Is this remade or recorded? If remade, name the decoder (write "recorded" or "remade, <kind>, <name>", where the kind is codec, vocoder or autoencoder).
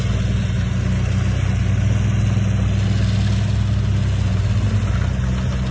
recorded